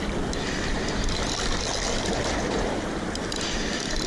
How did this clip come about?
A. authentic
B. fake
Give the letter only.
A